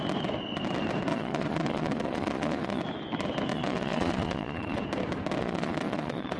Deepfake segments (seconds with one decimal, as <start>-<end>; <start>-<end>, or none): 1.1-2.8; 3.5-4.8; 5.4-6.4